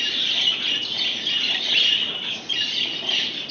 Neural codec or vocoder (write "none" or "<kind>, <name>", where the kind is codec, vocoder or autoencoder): none